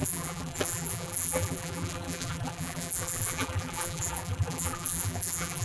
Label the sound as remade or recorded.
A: remade